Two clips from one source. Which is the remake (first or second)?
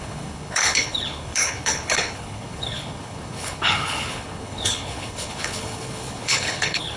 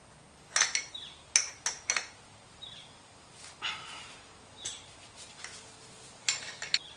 first